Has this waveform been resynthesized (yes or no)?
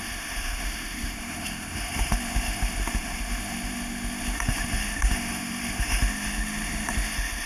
yes